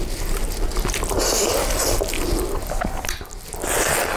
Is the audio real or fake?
real